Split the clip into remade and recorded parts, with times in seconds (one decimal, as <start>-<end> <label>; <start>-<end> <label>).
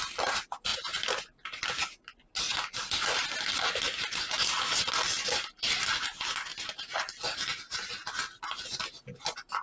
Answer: 0.0-9.6 recorded